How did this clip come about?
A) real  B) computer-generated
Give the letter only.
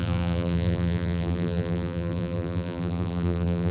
B